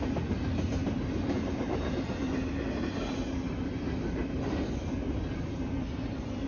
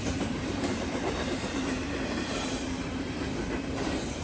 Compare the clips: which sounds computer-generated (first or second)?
second